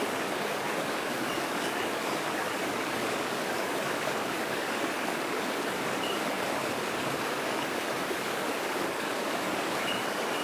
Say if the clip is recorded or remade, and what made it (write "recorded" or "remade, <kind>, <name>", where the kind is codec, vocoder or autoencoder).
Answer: remade, codec, DAC